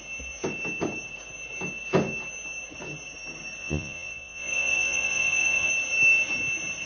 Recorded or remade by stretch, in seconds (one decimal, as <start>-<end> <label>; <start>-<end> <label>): 0.0-3.6 recorded; 3.6-5.7 remade; 5.7-6.9 recorded